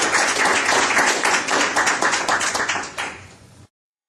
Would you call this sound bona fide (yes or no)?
no